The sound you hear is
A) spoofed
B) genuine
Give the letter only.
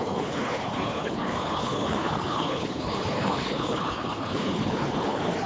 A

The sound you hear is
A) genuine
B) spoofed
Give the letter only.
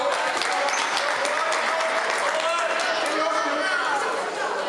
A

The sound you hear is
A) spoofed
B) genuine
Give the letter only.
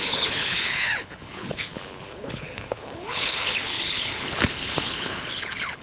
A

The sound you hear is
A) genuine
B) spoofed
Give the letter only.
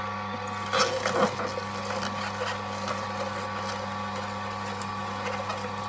A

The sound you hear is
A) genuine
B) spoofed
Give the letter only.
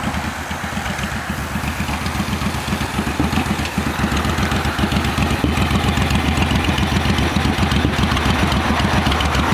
A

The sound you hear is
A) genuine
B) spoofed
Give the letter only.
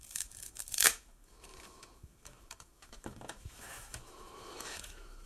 B